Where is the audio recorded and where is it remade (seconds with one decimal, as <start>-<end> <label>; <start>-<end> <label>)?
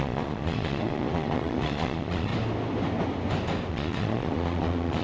0.0-2.3 remade; 2.3-3.7 recorded; 3.7-5.0 remade